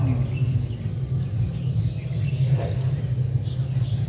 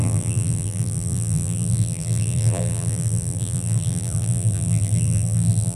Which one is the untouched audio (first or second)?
first